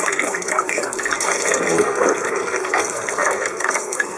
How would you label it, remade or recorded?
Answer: remade